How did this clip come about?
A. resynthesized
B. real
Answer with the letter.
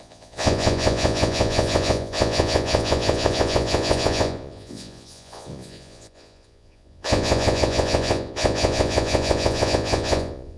A